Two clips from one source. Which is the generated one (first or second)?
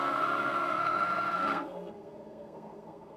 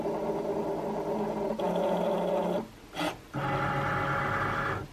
first